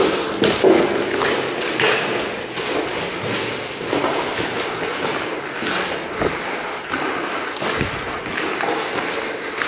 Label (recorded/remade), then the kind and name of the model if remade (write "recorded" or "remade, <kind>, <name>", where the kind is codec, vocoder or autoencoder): recorded